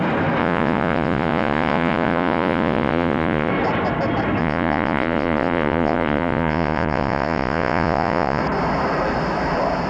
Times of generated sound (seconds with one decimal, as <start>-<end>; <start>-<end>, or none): 0.4-3.5; 4.4-8.4